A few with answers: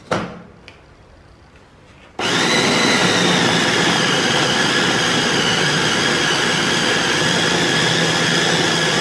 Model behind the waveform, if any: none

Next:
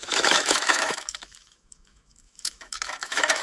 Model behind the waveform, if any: autoencoder, DAC-VAE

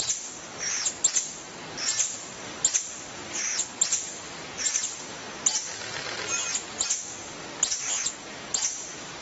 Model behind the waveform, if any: none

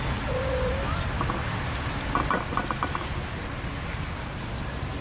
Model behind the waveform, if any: none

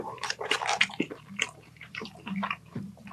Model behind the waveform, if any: vocoder, BigVGAN v2